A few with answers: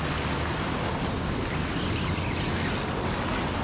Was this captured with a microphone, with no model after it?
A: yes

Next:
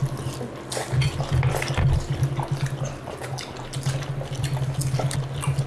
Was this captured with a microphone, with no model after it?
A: yes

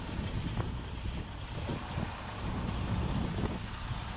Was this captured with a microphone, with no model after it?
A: yes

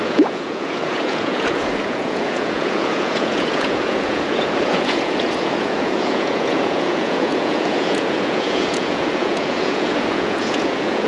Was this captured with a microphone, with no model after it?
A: no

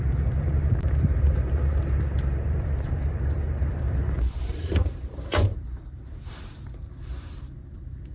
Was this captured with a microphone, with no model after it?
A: no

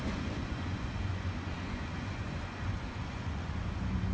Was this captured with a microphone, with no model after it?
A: no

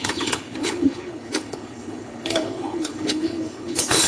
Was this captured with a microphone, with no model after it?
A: no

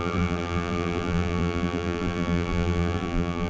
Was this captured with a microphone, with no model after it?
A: no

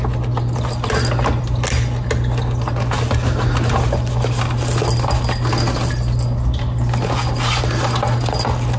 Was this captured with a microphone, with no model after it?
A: yes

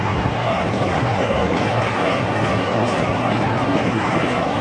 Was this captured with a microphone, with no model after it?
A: no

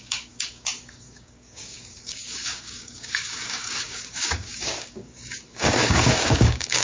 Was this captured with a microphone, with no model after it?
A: no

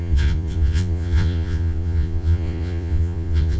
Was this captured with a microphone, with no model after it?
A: no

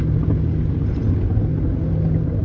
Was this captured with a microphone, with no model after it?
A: yes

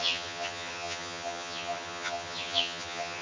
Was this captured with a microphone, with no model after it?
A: no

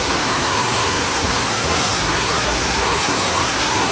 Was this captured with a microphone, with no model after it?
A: no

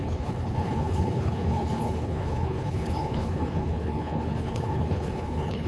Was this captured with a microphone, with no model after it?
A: no